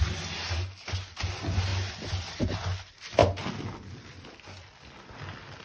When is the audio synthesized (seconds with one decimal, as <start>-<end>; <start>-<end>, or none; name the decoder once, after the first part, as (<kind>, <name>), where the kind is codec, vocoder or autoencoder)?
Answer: none